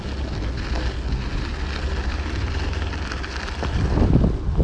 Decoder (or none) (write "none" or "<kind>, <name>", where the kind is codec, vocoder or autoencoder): none